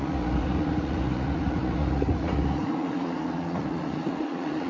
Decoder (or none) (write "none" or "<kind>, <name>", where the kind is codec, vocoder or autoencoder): vocoder, Vocos